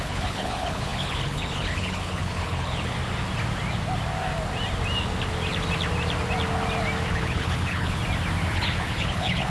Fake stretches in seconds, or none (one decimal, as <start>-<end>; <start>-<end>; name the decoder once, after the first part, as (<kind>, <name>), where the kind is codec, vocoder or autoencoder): 0.0-3.0 (codec, HILCodec); 7.1-8.0; 8.5-9.5